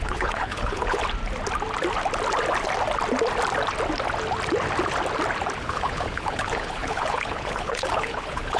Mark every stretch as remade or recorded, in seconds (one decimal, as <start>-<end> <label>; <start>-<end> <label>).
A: 0.0-1.0 remade; 1.0-5.6 recorded; 5.6-8.6 remade